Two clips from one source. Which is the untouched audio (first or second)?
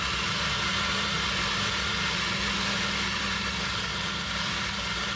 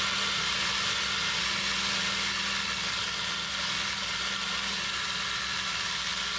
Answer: second